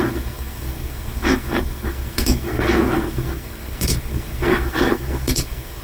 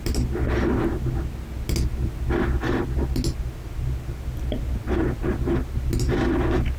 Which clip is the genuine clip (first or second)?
second